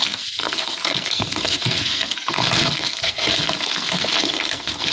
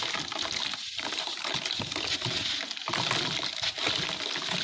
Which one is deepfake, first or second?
first